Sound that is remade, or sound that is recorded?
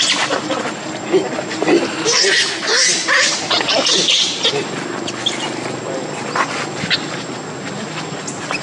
recorded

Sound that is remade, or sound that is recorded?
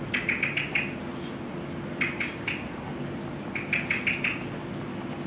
recorded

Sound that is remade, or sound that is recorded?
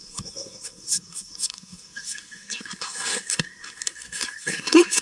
remade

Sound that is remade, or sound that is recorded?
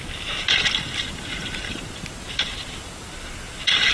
recorded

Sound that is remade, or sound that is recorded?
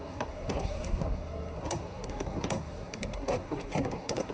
remade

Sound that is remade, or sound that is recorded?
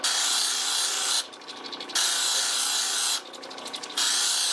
recorded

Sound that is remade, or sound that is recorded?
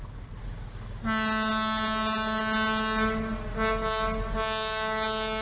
recorded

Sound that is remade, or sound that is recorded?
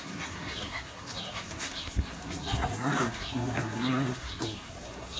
remade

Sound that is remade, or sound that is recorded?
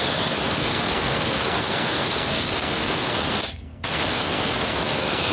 remade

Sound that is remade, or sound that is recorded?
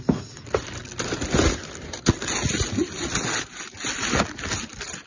recorded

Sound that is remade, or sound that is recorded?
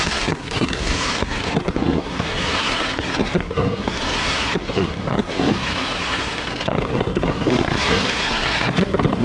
remade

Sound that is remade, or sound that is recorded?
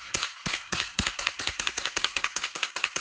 remade